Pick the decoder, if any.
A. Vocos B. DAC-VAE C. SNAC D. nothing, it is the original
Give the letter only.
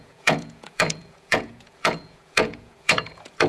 A